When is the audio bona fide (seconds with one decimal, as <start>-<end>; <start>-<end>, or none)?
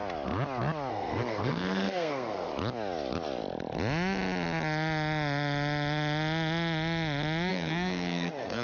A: 0.0-0.9; 2.5-7.5